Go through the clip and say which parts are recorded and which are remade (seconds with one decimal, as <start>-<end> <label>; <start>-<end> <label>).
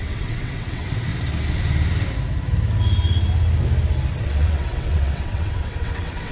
0.0-1.1 remade; 1.1-4.2 recorded; 4.2-6.3 remade